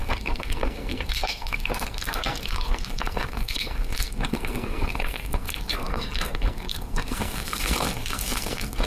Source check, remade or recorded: remade